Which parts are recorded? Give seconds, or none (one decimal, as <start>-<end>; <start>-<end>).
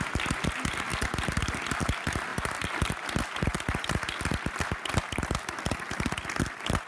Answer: 0.0-6.9